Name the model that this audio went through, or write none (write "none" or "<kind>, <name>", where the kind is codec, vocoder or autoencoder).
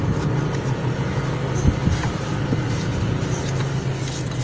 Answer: none